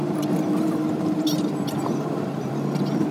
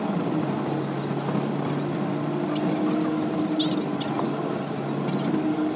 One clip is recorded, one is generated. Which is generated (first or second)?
first